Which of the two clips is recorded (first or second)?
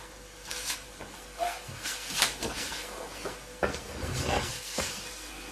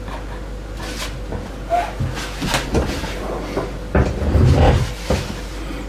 second